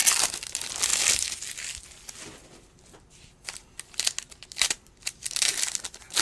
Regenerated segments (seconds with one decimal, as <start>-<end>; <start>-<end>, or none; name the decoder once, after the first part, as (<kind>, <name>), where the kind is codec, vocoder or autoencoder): 0.0-0.9 (vocoder, BigVGAN v2); 4.6-6.2

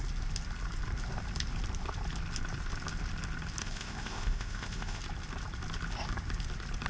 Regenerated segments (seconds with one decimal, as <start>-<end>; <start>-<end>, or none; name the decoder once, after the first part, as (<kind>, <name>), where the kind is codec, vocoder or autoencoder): 3.6-5.0 (codec, ZipCodec)

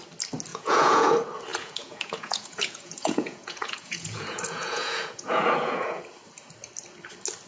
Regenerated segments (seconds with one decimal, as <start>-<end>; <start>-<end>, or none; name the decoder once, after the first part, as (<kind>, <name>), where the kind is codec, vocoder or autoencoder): 0.5-1.1 (vocoder, Vocos); 1.5-6.0

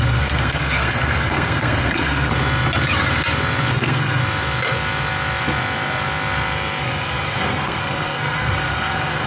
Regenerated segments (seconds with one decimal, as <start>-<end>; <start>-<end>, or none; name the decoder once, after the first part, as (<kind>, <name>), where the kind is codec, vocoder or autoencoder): 0.0-2.3 (codec, SNAC); 3.7-4.2; 6.8-9.3

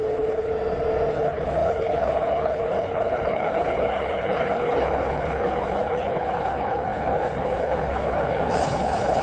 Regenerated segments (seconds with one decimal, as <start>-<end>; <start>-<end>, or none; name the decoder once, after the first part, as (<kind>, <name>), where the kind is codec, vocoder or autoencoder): 0.0-0.5 (codec, HILCodec); 1.1-9.2